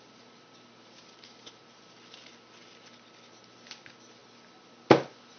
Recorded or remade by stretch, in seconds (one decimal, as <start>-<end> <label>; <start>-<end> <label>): 0.0-5.4 recorded